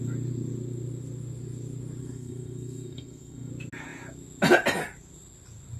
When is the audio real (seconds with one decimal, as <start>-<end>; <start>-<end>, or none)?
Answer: 0.0-2.0; 3.5-5.8